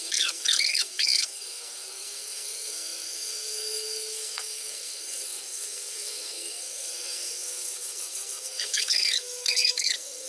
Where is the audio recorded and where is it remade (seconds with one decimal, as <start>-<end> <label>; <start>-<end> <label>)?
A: 0.0-10.3 remade